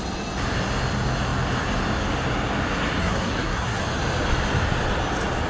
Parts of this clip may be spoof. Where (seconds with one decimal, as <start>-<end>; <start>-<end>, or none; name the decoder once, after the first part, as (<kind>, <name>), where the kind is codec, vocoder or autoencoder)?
3.0-3.8 (codec, SNAC)